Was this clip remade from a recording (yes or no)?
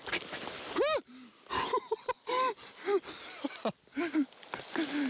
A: no